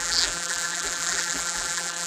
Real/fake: fake